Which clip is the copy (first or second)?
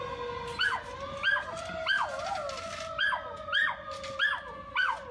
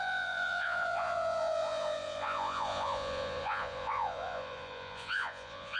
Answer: second